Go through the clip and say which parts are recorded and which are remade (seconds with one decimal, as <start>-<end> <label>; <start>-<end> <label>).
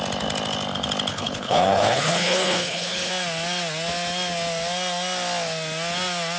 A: 0.0-1.1 recorded; 1.1-3.1 remade; 3.1-6.4 recorded